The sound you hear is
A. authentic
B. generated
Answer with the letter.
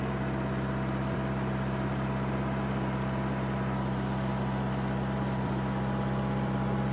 A